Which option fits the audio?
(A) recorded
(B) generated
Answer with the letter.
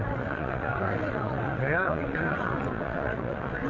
B